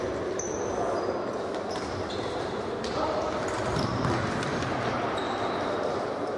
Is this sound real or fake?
real